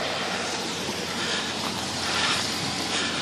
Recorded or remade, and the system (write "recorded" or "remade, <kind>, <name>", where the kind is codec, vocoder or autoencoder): remade, vocoder, BigVGAN v2